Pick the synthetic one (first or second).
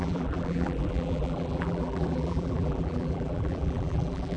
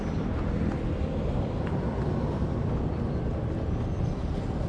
first